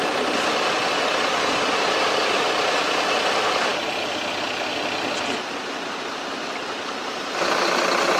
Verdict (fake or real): fake